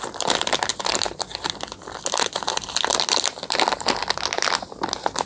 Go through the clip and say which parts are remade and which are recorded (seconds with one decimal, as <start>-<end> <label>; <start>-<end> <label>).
0.0-0.7 recorded; 0.7-2.7 remade; 2.7-5.3 recorded